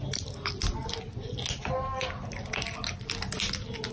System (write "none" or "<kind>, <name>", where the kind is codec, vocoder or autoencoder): none